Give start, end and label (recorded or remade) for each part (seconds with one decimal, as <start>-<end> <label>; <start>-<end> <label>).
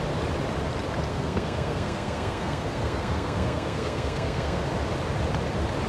0.0-1.1 recorded; 1.1-4.6 remade; 4.6-5.9 recorded